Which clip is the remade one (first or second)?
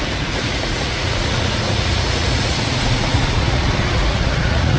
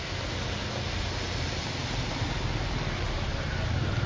first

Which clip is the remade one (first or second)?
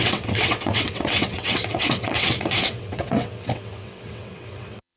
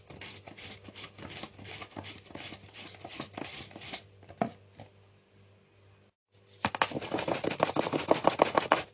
first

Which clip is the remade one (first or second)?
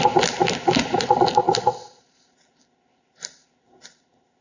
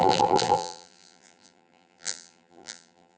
second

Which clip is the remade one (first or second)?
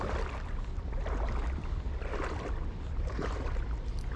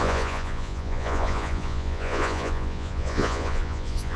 second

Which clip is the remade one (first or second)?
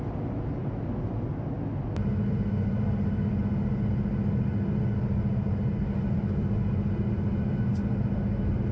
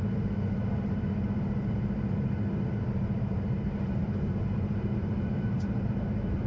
second